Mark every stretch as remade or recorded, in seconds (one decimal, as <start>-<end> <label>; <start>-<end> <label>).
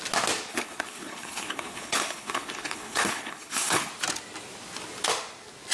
0.0-0.5 recorded; 0.5-3.9 remade; 3.9-5.7 recorded